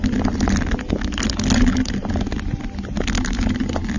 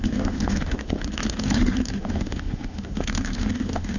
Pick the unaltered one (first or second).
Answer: first